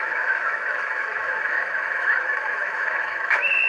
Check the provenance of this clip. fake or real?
fake